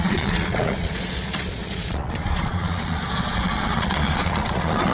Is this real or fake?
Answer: fake